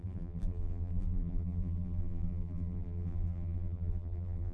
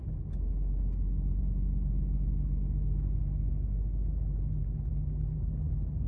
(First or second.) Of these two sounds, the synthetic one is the first